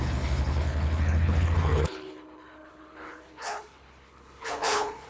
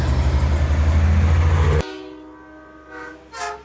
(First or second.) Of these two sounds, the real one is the second